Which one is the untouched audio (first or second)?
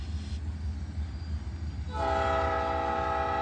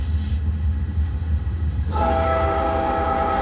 first